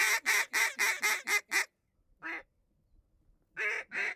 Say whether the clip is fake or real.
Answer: real